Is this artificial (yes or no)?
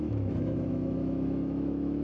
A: yes